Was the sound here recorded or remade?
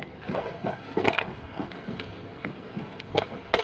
remade